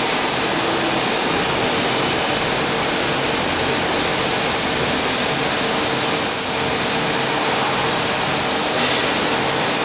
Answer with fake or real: real